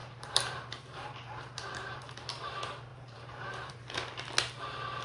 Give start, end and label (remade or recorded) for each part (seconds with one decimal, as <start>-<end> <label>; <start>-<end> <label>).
0.0-2.0 remade; 2.0-2.9 recorded; 2.9-3.7 remade; 3.7-5.0 recorded